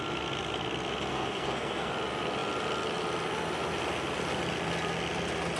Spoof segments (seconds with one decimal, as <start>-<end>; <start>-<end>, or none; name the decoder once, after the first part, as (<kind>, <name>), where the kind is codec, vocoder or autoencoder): 1.1-1.9 (codec, SNAC)